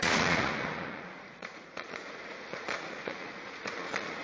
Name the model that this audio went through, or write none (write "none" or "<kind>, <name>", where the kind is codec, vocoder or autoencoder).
vocoder, Vocos